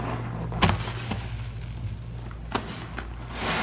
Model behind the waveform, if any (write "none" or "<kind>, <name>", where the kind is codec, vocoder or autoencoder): none